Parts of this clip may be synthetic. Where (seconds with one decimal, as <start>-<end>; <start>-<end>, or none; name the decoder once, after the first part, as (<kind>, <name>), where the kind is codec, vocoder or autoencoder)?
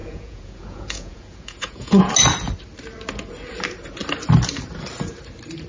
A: 0.0-2.1 (vocoder, Vocos)